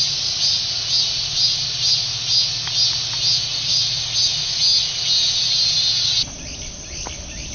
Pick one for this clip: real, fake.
real